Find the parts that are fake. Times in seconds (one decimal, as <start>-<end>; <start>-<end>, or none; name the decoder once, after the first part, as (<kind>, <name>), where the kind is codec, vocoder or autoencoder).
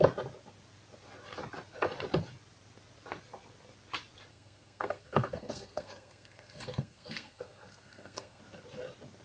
4.3-8.4 (codec, SNAC)